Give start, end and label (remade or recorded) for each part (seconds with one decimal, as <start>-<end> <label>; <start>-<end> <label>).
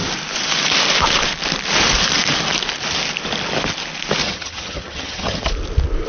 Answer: 0.0-4.2 recorded; 4.2-5.5 remade; 5.5-6.1 recorded